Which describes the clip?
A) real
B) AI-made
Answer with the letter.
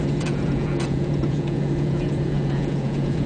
B